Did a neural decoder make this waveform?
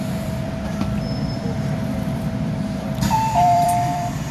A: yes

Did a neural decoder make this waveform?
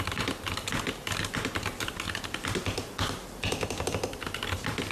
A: yes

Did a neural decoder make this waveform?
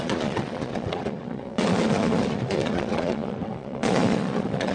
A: yes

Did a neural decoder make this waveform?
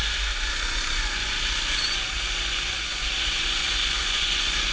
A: yes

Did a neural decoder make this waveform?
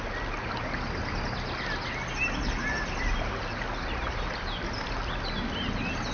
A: no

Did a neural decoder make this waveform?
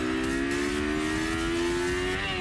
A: no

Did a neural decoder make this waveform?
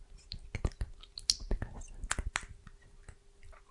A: no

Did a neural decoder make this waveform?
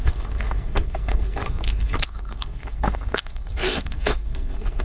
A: yes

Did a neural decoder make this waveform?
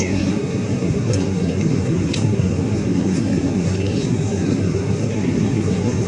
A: yes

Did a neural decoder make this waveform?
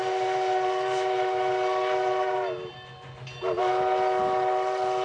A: no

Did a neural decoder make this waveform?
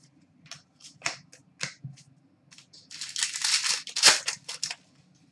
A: no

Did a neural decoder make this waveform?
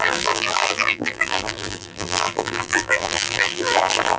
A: yes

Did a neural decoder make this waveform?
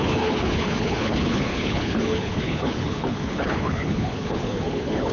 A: yes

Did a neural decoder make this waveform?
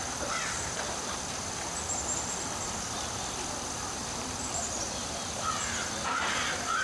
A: yes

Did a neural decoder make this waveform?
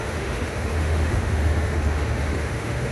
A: yes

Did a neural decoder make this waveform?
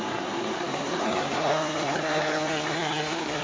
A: yes